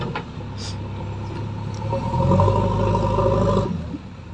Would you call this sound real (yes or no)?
yes